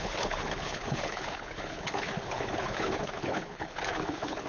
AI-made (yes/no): yes